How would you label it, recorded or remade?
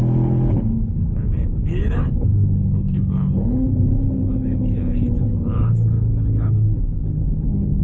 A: remade